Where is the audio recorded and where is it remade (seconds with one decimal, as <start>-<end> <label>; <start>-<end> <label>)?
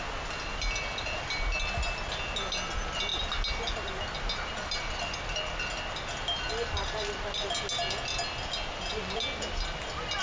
0.0-10.2 recorded